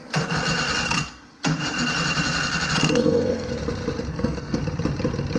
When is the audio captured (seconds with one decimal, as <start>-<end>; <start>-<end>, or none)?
0.0-2.8; 3.5-4.1; 4.6-5.4

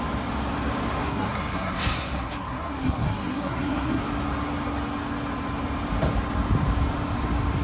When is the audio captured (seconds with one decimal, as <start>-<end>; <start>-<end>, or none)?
0.0-1.0; 4.0-7.6